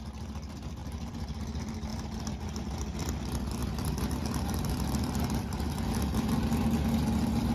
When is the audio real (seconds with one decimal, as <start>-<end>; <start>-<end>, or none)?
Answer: 0.0-7.5